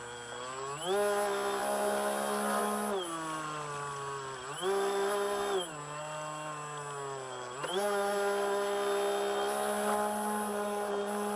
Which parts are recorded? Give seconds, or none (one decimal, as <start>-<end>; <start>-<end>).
0.0-11.4